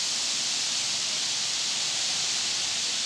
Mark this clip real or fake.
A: real